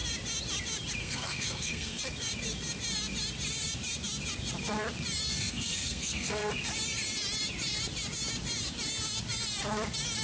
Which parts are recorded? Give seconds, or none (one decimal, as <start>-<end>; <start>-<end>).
0.0-1.0; 2.0-5.3; 6.5-10.2